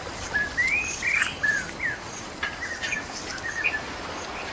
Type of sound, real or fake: real